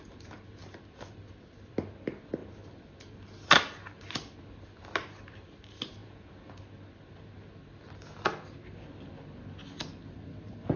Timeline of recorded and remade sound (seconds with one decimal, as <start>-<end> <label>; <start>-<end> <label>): 0.0-6.0 recorded; 6.0-6.5 remade; 6.5-10.8 recorded